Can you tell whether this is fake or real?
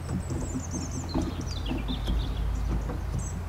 real